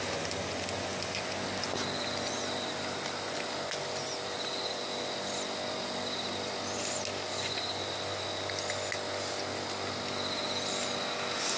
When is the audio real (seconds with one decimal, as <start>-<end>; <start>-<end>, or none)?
0.0-11.6

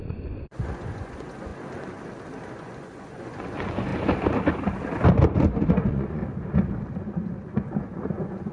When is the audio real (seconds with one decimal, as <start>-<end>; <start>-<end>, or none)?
1.5-2.5; 3.9-5.7; 6.2-7.0

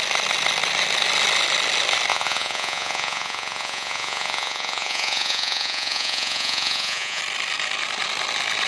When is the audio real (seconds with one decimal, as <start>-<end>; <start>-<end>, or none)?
0.0-2.1; 7.2-8.7

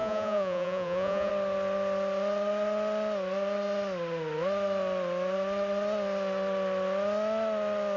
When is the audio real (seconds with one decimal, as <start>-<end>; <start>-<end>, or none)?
1.3-8.0

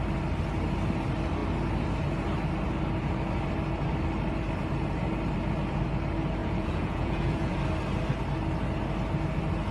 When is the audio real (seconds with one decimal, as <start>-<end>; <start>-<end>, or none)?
0.0-6.4; 7.5-9.7

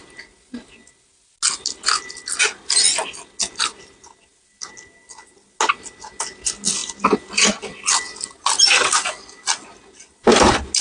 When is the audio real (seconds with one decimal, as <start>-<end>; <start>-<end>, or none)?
0.0-10.8

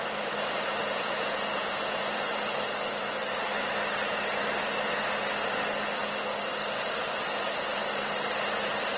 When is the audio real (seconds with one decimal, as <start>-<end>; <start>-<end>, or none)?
0.0-0.8; 2.3-9.0

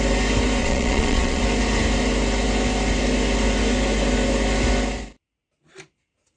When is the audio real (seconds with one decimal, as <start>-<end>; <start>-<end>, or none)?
0.0-0.6; 1.4-6.4